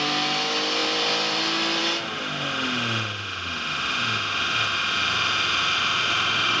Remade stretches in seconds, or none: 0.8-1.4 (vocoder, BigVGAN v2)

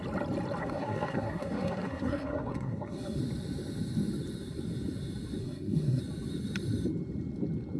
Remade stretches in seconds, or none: 0.6-3.2 (codec, SNAC); 5.4-6.0

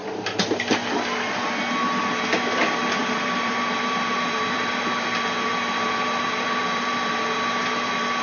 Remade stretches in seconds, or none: 2.9-8.2 (vocoder, BigVGAN v2)

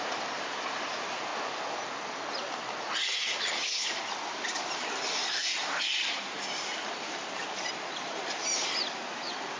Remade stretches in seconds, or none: 0.0-1.3 (vocoder, BigVGAN v2); 5.8-9.6

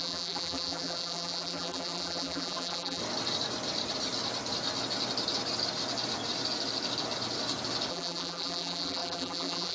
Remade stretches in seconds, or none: 0.0-3.0 (vocoder, BigVGAN v2); 7.9-9.7

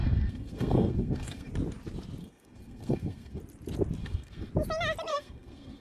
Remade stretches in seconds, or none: 0.0-1.5 (codec, SNAC); 2.2-3.4; 4.0-4.5; 5.1-5.8

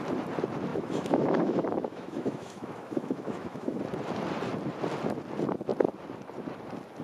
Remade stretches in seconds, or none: 0.7-3.8 (autoencoder, DAC-VAE)